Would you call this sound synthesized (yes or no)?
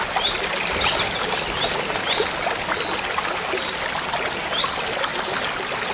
no